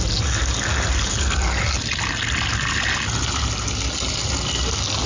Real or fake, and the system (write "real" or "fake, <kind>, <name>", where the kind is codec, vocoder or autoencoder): real